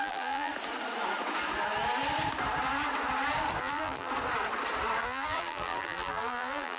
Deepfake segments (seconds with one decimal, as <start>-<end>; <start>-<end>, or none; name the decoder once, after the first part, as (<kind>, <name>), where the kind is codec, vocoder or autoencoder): 0.0-0.5 (vocoder, BigVGAN v2); 3.6-4.1; 5.0-6.8